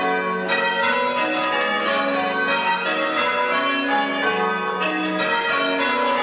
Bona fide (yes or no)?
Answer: yes